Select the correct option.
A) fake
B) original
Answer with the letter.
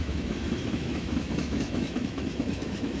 A